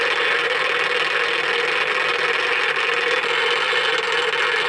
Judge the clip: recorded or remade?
recorded